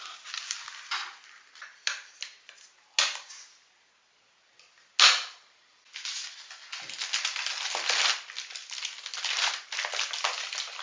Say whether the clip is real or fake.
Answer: real